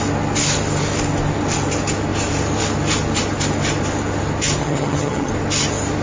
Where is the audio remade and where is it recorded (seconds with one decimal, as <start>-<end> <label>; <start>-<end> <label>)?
0.0-4.6 recorded; 4.6-5.3 remade; 5.3-6.0 recorded